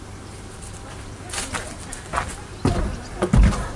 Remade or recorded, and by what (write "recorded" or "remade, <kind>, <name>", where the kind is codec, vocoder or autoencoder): recorded